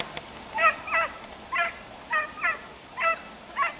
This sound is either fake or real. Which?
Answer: real